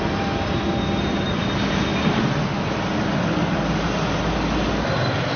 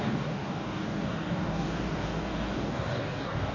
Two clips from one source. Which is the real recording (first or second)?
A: first